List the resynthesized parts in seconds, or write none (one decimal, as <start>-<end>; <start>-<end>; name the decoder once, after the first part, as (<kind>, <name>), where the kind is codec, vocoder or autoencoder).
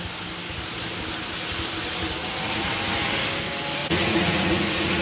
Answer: 2.2-2.7 (vocoder, Vocos); 3.8-5.0